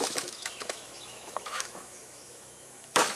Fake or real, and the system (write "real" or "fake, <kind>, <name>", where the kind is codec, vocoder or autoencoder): fake, autoencoder, DAC-VAE